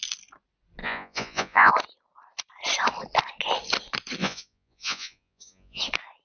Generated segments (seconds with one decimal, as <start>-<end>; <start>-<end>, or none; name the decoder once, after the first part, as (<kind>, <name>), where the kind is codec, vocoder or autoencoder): 0.8-1.7 (vocoder, Vocos); 4.2-5.8